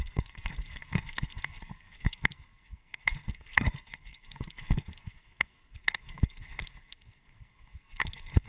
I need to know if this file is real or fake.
fake